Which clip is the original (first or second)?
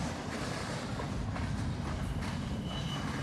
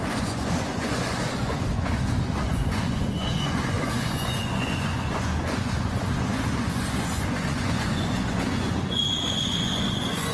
first